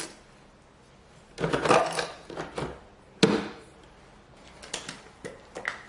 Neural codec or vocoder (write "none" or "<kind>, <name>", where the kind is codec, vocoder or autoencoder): none